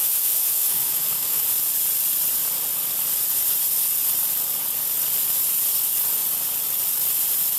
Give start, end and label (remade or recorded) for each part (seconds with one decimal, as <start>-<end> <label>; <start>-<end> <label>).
0.0-1.4 remade; 1.4-7.6 recorded